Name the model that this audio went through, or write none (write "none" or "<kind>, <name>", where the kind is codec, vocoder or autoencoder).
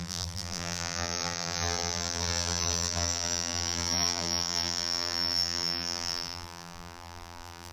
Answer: vocoder, BigVGAN v2